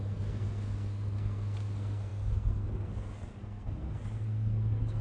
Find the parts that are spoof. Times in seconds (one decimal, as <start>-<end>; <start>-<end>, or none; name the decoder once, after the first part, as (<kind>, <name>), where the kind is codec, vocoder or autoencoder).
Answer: 0.0-5.0 (codec, SNAC)